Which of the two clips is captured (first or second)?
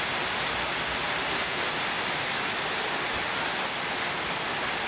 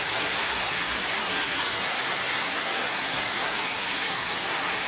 first